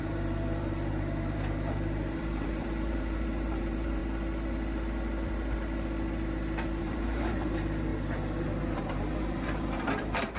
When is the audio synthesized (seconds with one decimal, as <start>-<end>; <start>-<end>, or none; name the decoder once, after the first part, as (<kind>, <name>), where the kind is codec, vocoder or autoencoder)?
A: 0.0-4.0 (vocoder, BigVGAN v2); 6.8-7.9; 8.6-10.4